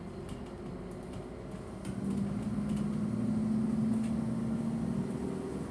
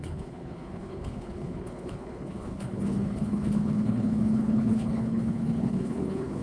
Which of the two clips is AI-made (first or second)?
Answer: second